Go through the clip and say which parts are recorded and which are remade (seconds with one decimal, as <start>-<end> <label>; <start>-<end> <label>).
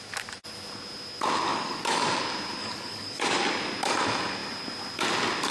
0.0-1.5 recorded; 1.5-2.2 remade; 2.2-2.6 recorded; 2.6-3.4 remade; 3.4-5.5 recorded